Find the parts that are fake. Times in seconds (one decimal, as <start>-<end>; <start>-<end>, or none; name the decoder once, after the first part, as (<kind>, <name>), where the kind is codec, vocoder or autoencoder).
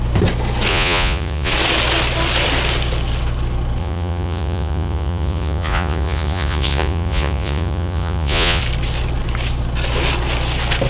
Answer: 0.7-1.5 (vocoder, Vocos); 3.8-8.6